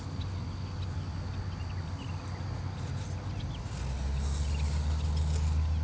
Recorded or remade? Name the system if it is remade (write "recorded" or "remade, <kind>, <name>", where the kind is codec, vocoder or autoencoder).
recorded